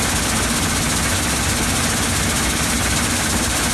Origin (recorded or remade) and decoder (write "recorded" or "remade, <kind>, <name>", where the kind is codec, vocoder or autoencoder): recorded